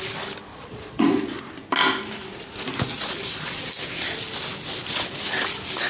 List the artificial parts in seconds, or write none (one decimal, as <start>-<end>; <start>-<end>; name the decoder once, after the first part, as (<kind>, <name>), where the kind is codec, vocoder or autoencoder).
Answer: 0.5-1.4 (vocoder, Vocos); 2.9-3.6